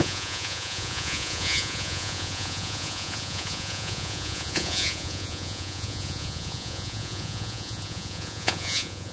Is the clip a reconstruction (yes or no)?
yes